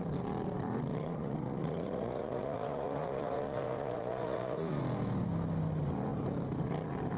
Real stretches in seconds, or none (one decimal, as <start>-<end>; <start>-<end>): 0.0-0.9; 4.8-7.2